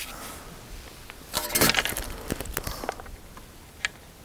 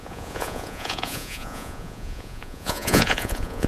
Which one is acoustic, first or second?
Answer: first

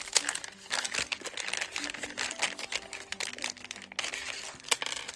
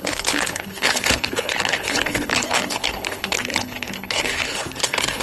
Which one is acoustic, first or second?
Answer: first